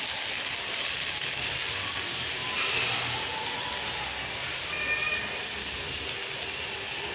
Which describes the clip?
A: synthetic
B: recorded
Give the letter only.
B